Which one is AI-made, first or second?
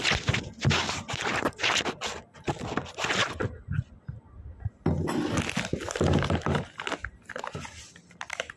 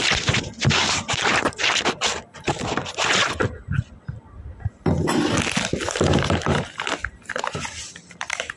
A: second